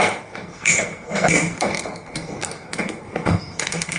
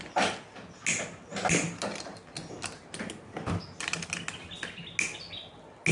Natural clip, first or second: second